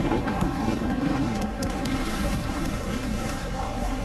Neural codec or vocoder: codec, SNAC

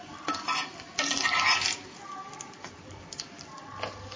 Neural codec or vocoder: none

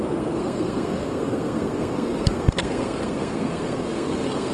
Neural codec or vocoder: codec, SNAC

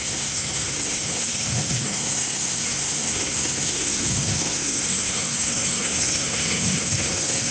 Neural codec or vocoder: codec, SNAC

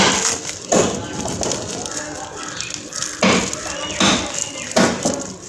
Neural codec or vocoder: none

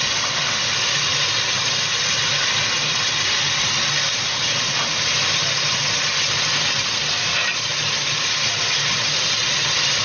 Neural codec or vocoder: none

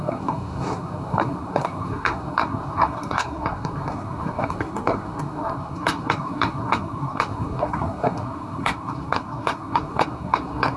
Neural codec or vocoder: codec, SNAC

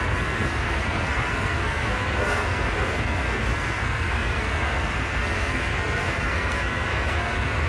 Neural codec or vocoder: codec, SNAC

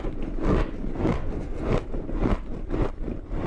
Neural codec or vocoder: none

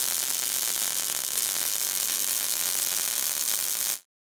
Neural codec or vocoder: none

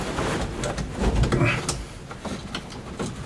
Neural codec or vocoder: none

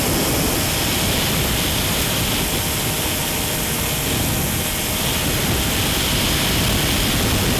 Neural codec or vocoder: none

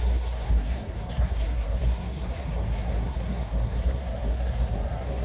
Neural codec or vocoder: codec, SNAC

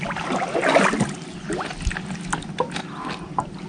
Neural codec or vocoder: none